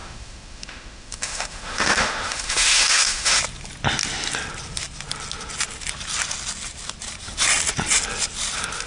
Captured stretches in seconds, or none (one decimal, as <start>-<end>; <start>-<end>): 3.4-8.9